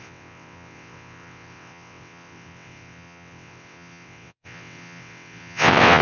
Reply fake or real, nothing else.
fake